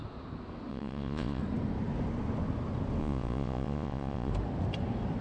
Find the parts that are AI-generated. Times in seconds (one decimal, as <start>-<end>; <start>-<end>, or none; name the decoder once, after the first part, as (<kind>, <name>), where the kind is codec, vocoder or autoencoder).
0.7-1.4 (vocoder, Vocos); 3.0-4.3